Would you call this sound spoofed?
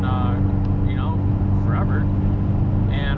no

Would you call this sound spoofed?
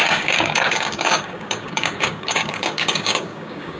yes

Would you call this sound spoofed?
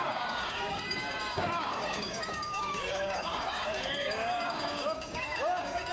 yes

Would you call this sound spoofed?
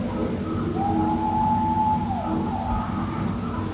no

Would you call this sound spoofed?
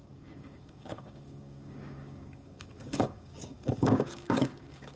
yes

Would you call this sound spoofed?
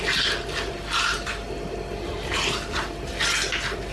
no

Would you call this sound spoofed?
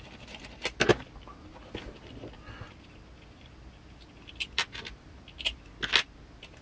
no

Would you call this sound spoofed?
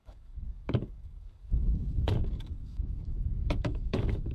yes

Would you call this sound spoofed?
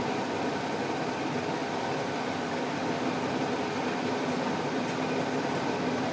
no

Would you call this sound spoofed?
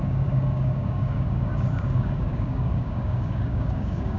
yes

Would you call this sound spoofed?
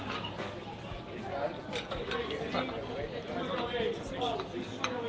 no